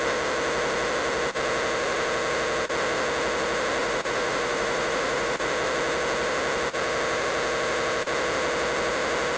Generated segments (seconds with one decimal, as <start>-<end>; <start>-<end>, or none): 3.8-5.5